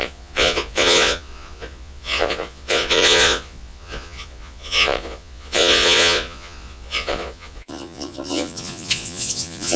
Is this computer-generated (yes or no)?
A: yes